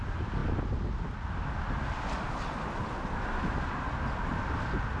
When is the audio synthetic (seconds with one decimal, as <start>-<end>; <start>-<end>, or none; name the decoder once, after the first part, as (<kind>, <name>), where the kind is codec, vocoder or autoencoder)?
none